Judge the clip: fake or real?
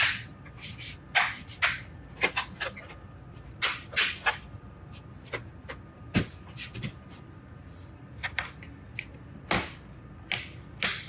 real